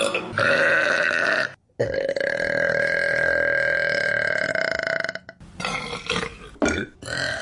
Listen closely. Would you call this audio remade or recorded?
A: recorded